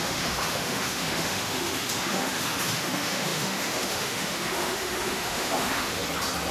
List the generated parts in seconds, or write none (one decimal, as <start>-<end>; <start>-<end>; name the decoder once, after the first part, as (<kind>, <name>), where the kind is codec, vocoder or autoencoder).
0.0-6.0 (autoencoder, DAC-VAE)